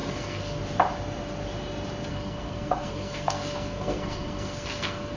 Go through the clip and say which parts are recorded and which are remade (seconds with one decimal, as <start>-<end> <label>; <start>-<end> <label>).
0.0-0.6 remade; 0.6-2.1 recorded; 2.1-5.2 remade